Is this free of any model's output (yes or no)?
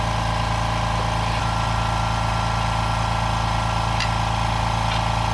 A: yes